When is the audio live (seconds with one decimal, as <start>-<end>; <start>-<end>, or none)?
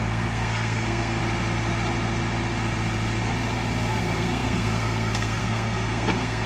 1.2-4.0